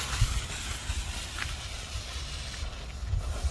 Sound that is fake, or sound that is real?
real